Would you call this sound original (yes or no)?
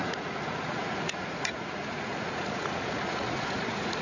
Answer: no